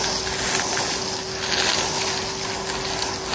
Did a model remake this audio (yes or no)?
no